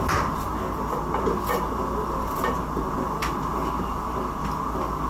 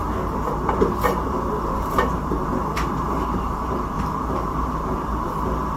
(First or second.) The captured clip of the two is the first